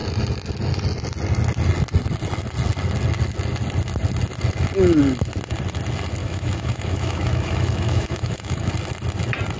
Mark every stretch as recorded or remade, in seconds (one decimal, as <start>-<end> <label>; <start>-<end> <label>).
0.0-6.2 recorded; 6.2-8.7 remade; 8.7-9.6 recorded